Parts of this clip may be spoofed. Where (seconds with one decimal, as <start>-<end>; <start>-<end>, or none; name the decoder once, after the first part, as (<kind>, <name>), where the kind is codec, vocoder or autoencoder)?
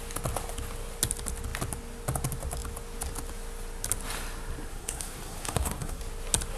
4.7-6.0 (codec, SNAC)